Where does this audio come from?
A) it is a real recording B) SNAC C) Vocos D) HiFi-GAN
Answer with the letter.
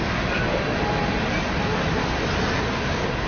A